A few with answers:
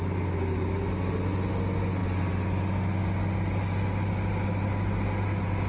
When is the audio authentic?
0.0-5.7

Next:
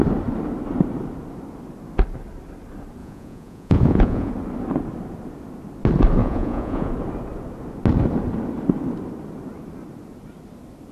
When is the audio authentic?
0.0-3.0; 4.3-6.2; 6.9-10.9

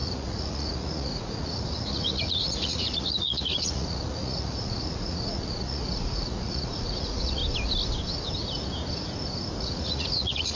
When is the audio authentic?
7.4-9.6